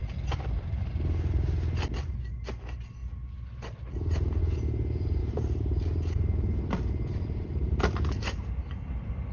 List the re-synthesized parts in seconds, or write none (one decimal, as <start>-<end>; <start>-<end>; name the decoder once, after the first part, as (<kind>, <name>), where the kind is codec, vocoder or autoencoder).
0.0-0.8 (vocoder, BigVGAN v2); 3.0-4.4; 5.2-8.7